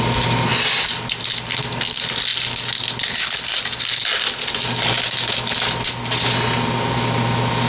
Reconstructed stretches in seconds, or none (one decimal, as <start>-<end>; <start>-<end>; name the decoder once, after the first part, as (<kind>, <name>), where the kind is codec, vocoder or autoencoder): none